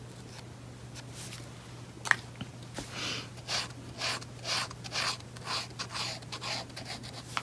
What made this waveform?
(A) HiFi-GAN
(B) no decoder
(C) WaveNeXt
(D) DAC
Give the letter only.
B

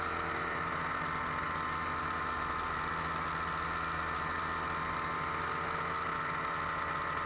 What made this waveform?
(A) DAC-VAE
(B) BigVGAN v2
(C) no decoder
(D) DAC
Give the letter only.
C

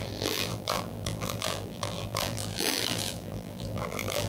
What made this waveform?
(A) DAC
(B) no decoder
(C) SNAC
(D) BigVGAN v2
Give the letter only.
D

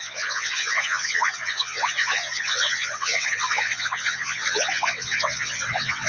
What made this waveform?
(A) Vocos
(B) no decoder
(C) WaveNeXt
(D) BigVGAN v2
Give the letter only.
C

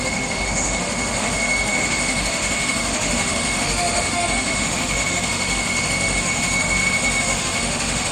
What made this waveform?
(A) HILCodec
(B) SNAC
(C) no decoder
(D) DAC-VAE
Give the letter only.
D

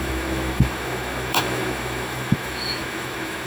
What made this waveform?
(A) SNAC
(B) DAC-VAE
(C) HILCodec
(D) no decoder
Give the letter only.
B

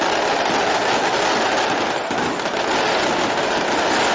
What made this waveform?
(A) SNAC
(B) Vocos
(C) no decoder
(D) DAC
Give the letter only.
C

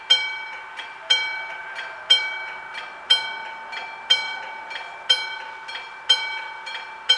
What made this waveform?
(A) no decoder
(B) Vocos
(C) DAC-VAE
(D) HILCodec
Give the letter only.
A